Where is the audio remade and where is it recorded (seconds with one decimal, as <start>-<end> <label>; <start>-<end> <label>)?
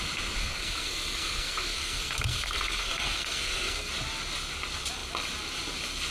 0.0-0.4 recorded; 0.4-3.9 remade; 3.9-6.1 recorded